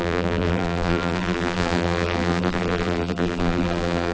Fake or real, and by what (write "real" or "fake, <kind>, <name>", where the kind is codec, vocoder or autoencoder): fake, vocoder, BigVGAN v2